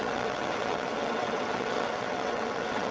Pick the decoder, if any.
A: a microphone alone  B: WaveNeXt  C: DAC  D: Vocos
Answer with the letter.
B